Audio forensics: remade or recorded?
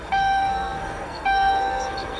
remade